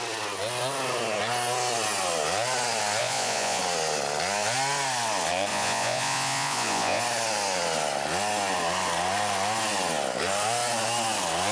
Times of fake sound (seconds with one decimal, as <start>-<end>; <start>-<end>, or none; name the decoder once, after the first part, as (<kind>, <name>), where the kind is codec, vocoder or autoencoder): 3.0-3.6 (vocoder, Vocos); 5.5-7.0